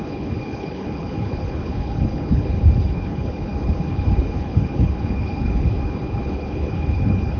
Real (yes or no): no